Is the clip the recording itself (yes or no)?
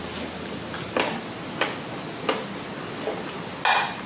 yes